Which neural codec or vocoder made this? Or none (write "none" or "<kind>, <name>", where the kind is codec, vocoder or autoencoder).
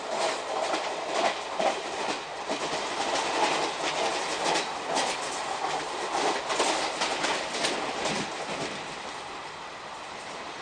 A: none